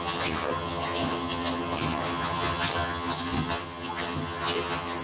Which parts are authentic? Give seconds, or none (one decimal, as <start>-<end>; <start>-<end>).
none